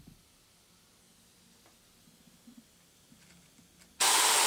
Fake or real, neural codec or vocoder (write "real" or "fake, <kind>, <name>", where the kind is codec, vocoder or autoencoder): real